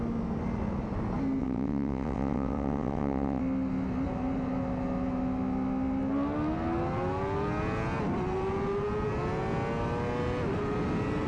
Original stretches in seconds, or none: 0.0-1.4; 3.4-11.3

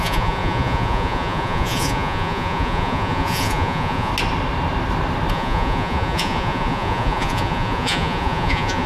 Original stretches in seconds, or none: 4.1-5.3

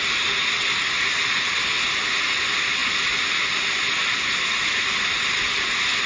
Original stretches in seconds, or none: 0.0-6.1

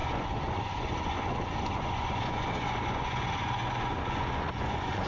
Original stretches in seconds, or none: none